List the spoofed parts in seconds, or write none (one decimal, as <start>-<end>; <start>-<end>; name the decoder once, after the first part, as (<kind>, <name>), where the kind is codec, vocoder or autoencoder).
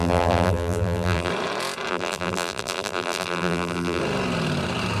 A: 0.0-1.3 (vocoder, BigVGAN v2); 1.9-4.0